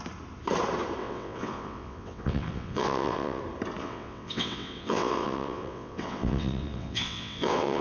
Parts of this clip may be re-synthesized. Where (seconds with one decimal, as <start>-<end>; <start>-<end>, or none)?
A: 1.0-3.4; 3.8-7.8